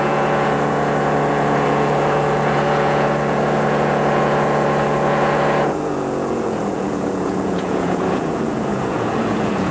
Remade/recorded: remade